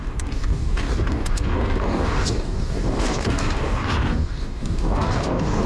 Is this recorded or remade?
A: remade